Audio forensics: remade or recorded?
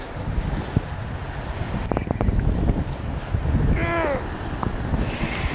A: recorded